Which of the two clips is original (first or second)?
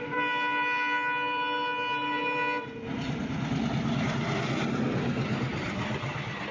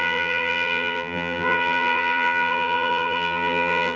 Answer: first